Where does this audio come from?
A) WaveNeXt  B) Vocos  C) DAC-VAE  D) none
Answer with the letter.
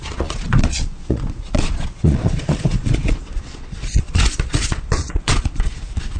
B